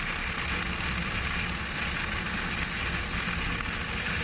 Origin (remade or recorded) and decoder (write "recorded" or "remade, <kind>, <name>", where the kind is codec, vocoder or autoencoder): recorded